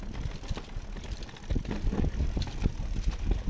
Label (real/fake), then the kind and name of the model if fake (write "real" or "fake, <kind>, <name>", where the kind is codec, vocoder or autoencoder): real